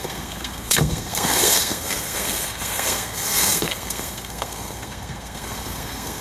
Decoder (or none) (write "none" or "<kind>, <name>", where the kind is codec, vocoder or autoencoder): codec, SNAC